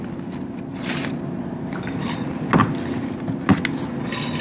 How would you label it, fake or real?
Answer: real